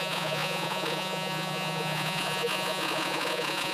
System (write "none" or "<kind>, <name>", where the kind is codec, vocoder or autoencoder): vocoder, Vocos